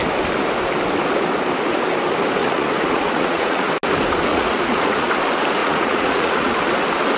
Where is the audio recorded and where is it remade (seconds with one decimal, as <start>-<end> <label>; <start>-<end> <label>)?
0.0-2.4 recorded; 2.4-3.7 remade; 3.7-4.3 recorded; 4.3-5.1 remade; 5.1-5.6 recorded; 5.6-6.6 remade; 6.6-7.2 recorded